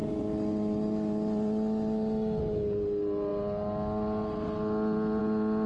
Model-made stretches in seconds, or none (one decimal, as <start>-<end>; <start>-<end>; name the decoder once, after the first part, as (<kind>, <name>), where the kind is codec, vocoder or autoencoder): none